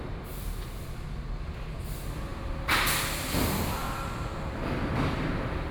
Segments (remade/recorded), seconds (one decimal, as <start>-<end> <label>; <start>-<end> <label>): 0.0-5.7 recorded